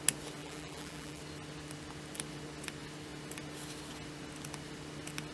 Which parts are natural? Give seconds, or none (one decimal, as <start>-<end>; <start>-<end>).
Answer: 0.0-0.4; 1.2-5.3